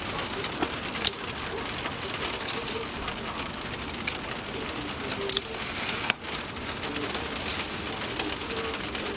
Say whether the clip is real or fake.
real